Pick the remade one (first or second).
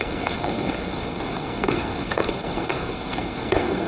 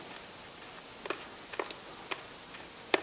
first